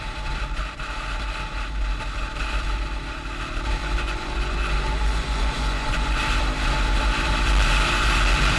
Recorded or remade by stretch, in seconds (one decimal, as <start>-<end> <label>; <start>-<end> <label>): 0.0-3.8 recorded; 3.8-6.2 remade; 6.2-8.6 recorded